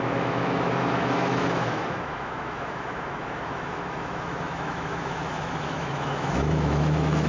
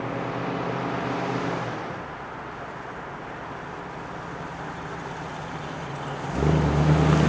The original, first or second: second